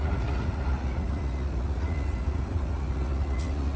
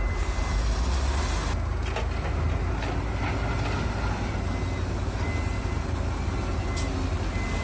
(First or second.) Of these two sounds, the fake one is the first